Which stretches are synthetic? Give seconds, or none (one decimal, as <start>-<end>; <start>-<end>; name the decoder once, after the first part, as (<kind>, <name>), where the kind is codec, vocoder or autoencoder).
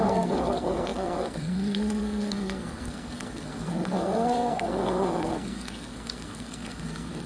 0.0-7.3 (codec, SNAC)